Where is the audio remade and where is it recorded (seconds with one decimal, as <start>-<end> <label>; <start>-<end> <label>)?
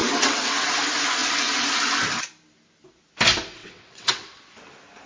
0.0-0.7 remade; 0.7-3.6 recorded; 3.6-4.4 remade; 4.4-5.1 recorded